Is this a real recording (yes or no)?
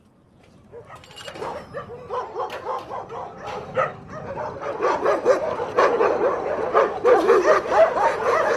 yes